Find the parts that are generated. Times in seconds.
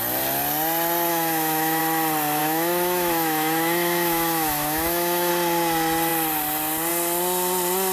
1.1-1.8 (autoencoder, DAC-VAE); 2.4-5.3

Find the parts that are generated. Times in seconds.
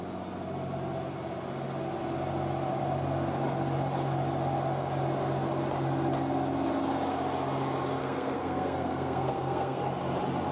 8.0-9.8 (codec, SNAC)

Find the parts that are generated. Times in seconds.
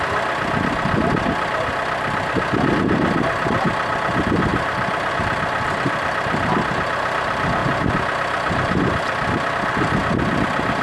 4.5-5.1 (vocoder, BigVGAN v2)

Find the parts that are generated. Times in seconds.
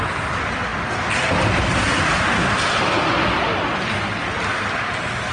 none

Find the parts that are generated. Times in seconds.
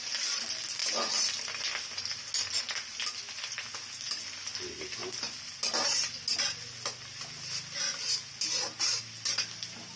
none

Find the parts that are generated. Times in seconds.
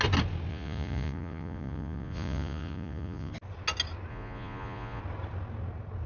0.5-3.3 (vocoder, Vocos); 4.1-5.0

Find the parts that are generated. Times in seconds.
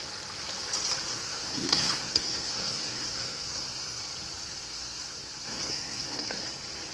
1.1-4.0 (codec, SNAC); 4.6-6.5